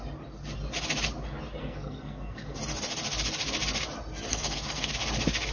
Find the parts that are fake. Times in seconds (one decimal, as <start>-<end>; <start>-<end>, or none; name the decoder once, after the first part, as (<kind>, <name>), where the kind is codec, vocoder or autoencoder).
1.6-2.6 (codec, SNAC); 4.3-4.9